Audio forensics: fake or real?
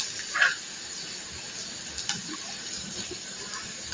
real